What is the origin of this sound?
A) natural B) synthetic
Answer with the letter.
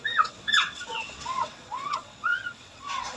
B